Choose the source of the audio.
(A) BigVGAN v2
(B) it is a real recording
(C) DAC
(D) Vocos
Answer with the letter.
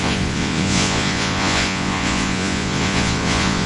D